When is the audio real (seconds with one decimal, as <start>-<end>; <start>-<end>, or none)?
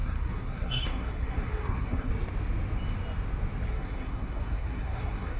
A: 2.1-3.7